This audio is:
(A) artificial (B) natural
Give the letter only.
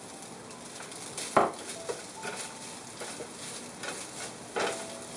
B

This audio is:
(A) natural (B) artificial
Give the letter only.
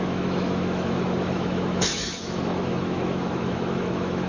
B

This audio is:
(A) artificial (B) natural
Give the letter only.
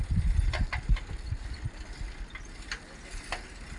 B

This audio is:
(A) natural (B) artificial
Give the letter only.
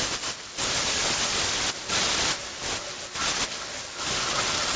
A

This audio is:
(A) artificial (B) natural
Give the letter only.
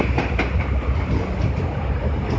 B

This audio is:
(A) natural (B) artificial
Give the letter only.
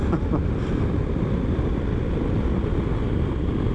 A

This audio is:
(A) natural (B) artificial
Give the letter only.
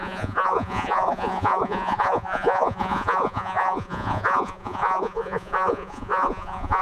B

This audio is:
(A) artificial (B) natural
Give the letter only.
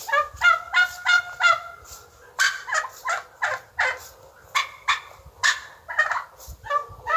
B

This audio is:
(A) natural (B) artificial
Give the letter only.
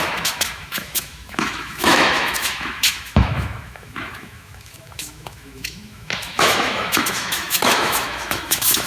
B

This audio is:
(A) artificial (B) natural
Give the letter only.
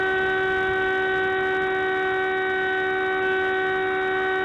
B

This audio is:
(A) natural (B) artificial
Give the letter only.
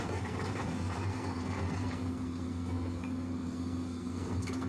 B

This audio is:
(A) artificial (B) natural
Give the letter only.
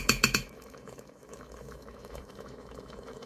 A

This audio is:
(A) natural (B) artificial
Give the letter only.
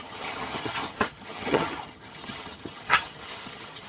B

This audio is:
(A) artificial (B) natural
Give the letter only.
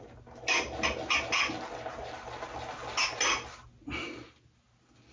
B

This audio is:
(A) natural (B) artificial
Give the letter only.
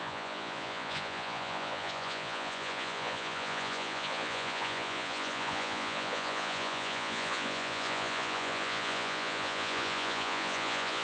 B